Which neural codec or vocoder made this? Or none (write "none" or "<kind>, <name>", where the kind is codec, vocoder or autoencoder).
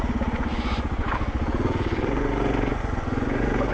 vocoder, Vocos